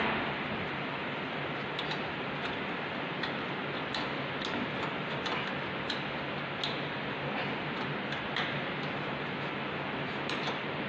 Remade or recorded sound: recorded